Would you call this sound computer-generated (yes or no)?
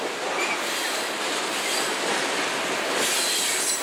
no